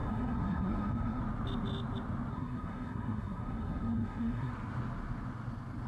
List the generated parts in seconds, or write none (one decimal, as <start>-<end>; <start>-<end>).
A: 0.0-1.2; 2.3-4.5